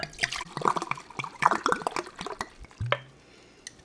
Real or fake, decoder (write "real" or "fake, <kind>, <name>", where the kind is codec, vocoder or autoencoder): real